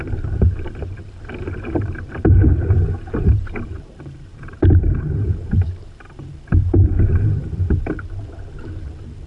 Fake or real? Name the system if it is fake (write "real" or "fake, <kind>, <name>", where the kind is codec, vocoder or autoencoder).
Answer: fake, vocoder, BigVGAN v2